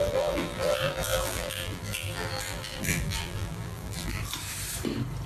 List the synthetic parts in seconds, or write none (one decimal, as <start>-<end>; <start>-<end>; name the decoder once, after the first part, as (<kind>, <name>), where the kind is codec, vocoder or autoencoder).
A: 0.0-4.2 (vocoder, BigVGAN v2)